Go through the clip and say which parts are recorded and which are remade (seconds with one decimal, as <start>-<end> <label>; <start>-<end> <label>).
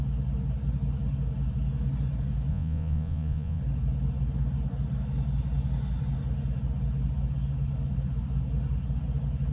0.0-2.5 recorded; 2.5-3.6 remade; 3.6-9.5 recorded